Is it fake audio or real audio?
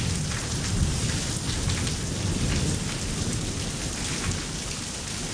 real